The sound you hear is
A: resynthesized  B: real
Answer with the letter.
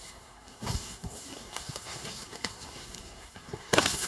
A